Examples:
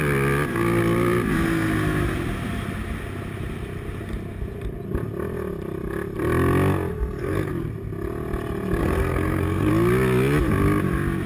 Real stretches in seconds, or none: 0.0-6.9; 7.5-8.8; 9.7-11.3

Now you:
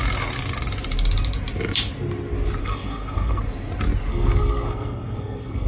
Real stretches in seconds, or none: 0.0-2.6; 3.4-4.1

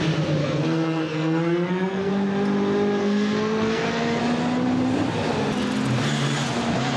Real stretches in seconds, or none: 0.0-0.4; 2.1-3.0; 4.2-7.0

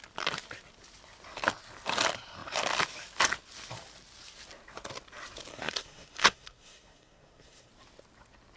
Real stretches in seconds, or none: 0.0-5.5; 7.7-8.6

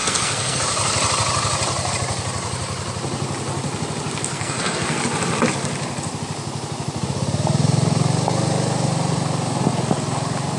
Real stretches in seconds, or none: 0.6-4.3; 5.0-10.6